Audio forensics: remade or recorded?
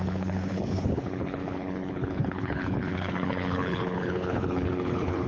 remade